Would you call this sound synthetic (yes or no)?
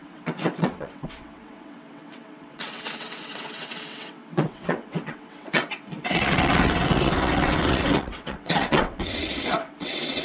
yes